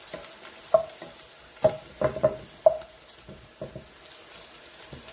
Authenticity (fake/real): real